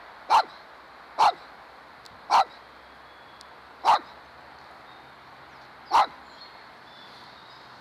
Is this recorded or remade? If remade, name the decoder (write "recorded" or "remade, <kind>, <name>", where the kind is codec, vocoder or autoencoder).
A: recorded